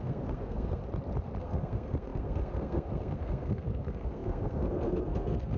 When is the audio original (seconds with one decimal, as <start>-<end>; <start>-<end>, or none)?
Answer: 0.8-1.4